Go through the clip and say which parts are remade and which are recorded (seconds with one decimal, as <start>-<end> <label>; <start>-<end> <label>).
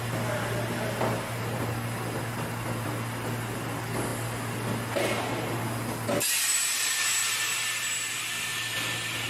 0.0-9.3 recorded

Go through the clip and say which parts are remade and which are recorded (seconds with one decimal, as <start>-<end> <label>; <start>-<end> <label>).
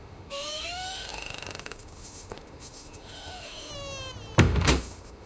0.0-3.7 remade; 3.7-4.4 recorded; 4.4-5.3 remade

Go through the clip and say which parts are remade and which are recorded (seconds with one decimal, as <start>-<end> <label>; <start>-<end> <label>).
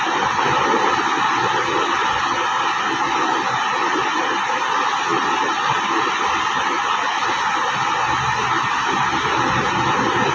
0.0-10.3 recorded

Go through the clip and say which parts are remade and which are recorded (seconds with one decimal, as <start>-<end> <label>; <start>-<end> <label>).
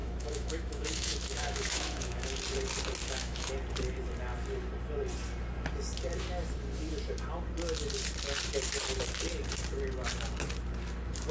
0.0-2.4 remade; 2.4-3.0 recorded; 3.0-3.5 remade; 3.5-11.3 recorded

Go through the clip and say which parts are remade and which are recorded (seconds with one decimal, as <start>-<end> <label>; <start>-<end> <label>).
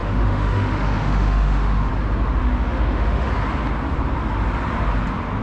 0.0-1.9 remade; 1.9-2.4 recorded; 2.4-3.3 remade; 3.3-5.4 recorded